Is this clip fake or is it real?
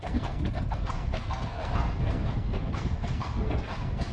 fake